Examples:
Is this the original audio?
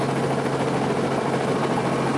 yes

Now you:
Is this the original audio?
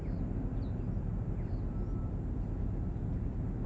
yes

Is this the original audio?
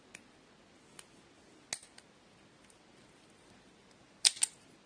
yes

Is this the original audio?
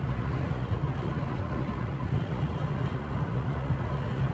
no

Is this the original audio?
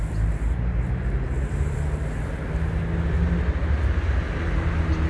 yes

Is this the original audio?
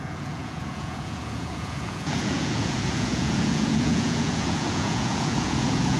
no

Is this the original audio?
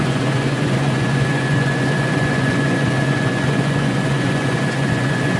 no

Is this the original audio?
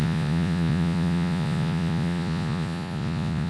no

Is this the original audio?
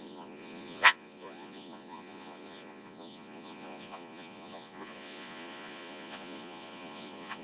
no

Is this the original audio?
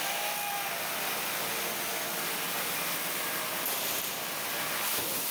yes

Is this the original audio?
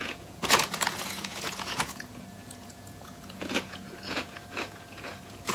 no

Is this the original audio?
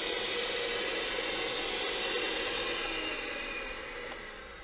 yes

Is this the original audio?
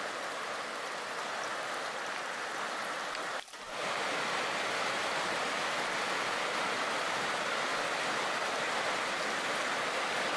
yes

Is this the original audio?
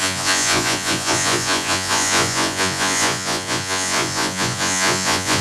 no